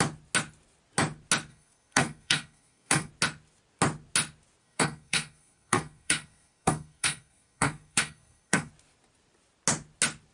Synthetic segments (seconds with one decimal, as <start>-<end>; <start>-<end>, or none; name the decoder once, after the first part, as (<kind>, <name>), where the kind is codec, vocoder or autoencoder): 1.5-3.1 (codec, SNAC); 4.6-8.7